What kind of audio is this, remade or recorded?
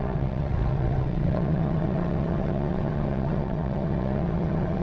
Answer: remade